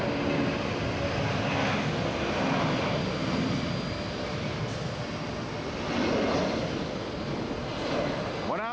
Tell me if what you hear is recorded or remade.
recorded